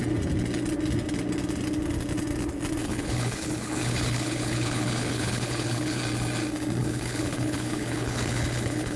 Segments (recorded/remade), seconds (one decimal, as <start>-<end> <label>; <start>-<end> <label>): 0.0-2.8 recorded; 2.8-6.0 remade; 6.0-6.8 recorded; 6.8-9.0 remade